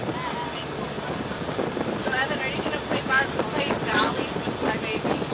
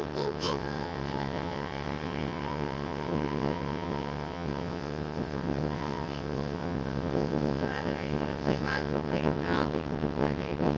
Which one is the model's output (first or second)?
second